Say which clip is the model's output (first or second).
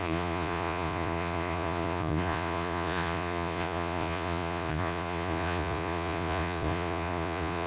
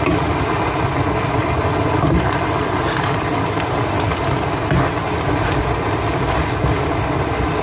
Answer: first